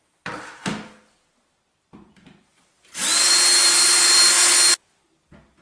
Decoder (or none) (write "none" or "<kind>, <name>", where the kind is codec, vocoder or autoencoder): none